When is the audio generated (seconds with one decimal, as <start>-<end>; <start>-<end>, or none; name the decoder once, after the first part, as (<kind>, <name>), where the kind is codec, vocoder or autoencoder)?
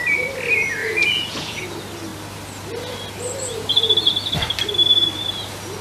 0.8-1.6 (vocoder, Vocos)